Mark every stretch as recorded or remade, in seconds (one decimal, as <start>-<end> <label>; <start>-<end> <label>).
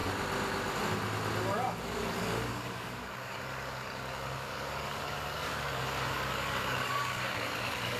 0.0-1.8 recorded; 1.8-8.0 remade